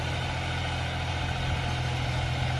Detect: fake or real real